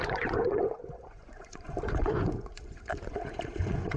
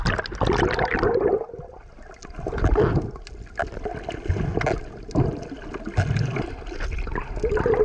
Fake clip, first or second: first